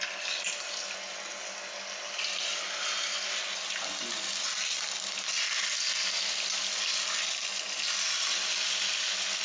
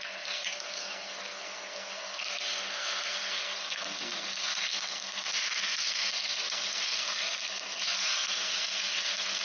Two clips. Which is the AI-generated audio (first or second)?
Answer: second